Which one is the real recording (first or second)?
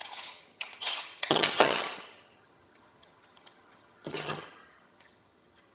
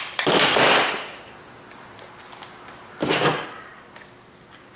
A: second